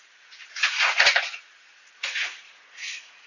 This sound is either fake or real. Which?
fake